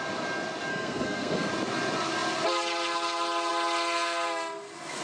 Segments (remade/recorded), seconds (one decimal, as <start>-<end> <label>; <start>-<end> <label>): 0.0-0.7 recorded; 0.7-1.5 remade; 1.5-5.0 recorded